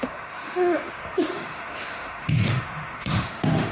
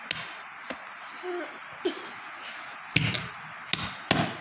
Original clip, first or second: second